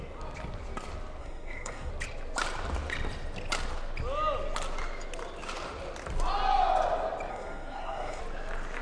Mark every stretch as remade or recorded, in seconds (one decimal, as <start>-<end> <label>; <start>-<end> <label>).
0.0-1.2 recorded; 1.2-1.9 remade; 1.9-7.3 recorded; 7.3-8.2 remade; 8.2-8.8 recorded

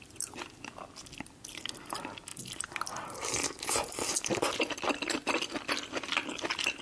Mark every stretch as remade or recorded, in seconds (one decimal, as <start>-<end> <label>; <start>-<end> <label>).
0.0-6.8 recorded

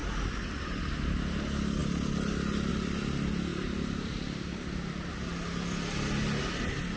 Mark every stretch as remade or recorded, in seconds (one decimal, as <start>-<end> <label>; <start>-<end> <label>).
0.0-0.8 remade; 0.8-3.5 recorded; 3.5-5.1 remade; 5.1-7.0 recorded

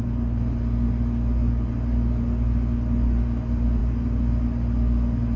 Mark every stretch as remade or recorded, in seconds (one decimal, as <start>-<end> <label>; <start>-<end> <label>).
0.0-5.4 recorded

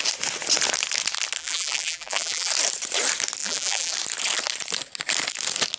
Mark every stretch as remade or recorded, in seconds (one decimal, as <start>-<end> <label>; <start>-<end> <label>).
0.0-1.4 recorded; 1.4-2.5 remade; 2.5-3.4 recorded; 3.4-3.9 remade; 3.9-5.8 recorded